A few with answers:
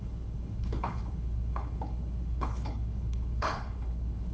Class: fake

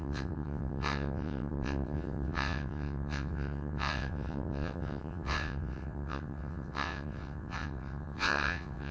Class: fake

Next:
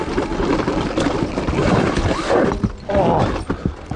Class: real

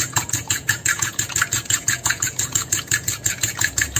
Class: fake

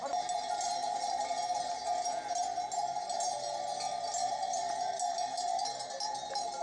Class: real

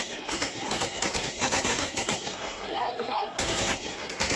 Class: fake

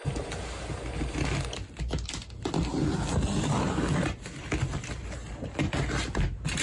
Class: real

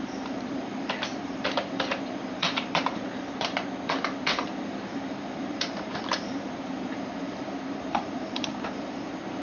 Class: fake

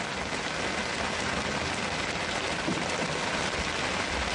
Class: real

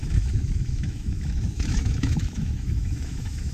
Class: fake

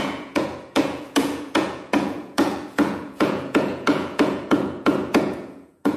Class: fake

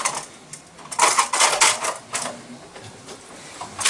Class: real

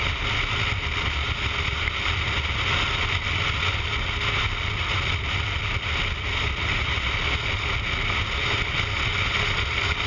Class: real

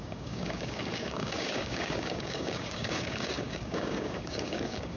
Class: fake